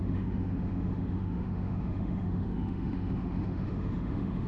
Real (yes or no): no